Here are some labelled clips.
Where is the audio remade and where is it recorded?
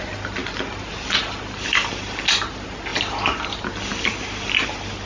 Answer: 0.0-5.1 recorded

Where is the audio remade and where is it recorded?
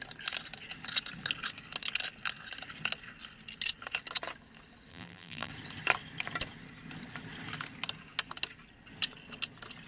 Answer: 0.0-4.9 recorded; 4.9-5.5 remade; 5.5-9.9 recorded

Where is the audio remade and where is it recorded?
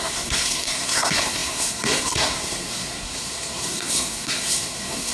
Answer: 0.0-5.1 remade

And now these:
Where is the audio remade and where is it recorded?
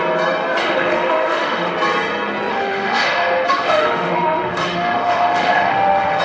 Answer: 0.0-0.6 recorded; 0.6-1.7 remade; 1.7-2.5 recorded; 2.5-6.2 remade